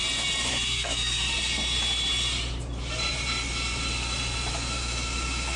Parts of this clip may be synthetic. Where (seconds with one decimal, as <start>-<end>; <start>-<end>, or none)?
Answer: 0.5-1.3; 4.5-5.6